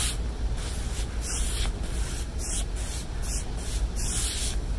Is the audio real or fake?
real